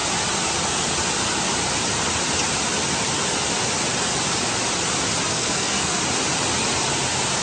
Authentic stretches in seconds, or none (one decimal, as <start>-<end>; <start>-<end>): 0.0-5.3; 6.0-7.4